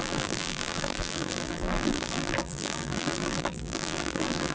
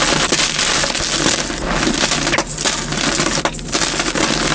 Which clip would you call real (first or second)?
second